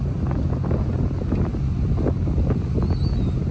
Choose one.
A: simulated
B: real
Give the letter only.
B